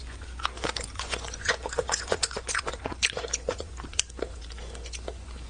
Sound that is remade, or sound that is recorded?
remade